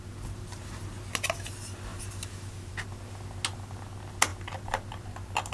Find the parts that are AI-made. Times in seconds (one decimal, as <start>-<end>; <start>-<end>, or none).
1.9-2.7